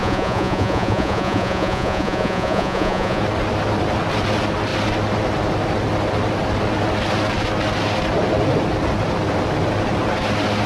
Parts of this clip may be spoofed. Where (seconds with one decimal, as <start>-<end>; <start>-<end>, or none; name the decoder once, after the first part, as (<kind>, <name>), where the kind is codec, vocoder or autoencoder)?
0.0-3.2 (vocoder, Vocos)